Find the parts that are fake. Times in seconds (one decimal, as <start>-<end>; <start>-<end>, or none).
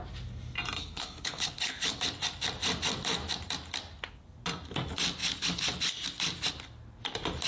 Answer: 0.8-2.0